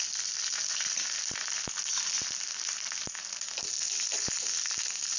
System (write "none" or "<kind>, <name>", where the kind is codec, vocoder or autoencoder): none